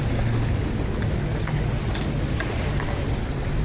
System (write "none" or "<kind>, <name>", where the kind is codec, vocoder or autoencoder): none